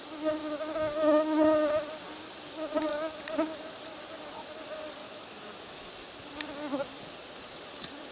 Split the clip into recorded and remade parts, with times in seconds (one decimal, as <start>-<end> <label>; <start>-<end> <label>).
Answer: 0.0-5.0 recorded; 5.0-5.9 remade; 5.9-8.1 recorded